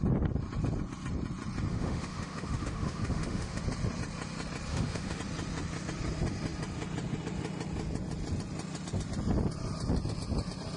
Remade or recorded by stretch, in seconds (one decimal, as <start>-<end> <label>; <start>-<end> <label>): 0.0-1.7 recorded; 1.7-3.6 remade; 3.6-4.7 recorded; 4.7-5.2 remade; 5.2-10.8 recorded